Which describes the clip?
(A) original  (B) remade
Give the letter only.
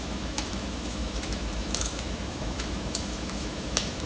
B